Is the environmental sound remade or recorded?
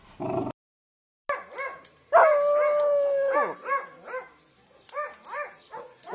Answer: recorded